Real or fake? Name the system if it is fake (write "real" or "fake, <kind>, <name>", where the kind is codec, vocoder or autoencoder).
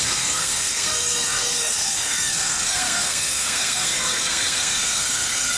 fake, codec, SNAC